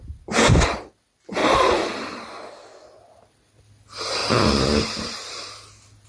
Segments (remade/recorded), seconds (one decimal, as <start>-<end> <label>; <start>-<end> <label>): 0.0-1.4 recorded; 1.4-2.2 remade; 2.2-4.2 recorded; 4.2-5.5 remade; 5.5-6.1 recorded